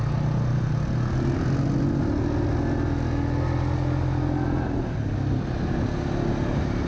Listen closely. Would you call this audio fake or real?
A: real